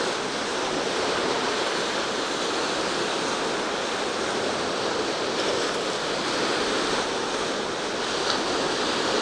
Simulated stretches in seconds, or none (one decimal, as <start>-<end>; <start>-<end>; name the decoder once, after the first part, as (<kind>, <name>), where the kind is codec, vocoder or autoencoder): 0.5-1.5 (vocoder, BigVGAN v2)